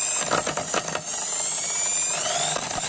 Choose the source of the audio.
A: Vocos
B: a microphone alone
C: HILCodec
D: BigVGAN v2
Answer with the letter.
B